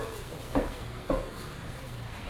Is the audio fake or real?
fake